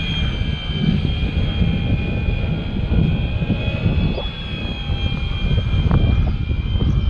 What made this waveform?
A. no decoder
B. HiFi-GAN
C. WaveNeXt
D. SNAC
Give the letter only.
A